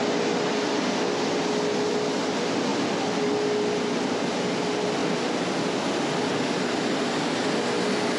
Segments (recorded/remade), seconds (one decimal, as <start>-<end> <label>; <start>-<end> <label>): 0.0-8.2 recorded